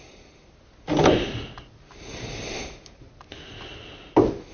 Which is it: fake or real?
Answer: real